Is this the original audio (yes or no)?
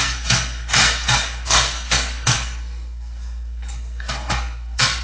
no